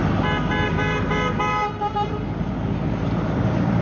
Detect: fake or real real